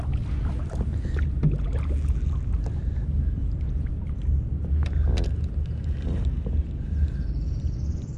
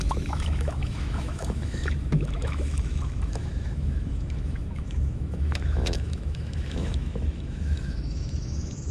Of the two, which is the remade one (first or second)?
second